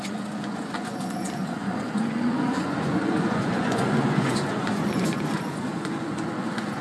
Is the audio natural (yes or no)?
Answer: no